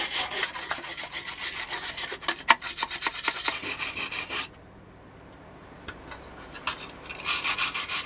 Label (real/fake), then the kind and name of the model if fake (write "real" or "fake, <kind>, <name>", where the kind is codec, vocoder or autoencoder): real